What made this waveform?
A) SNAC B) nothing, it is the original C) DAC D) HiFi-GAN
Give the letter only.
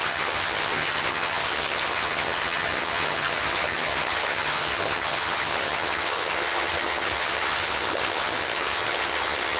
D